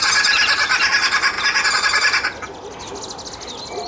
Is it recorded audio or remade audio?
recorded